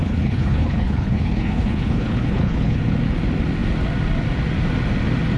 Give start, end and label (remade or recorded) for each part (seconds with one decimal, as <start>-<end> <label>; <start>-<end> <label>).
0.0-2.8 remade; 2.8-5.4 recorded